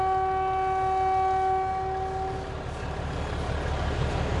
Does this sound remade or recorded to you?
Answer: recorded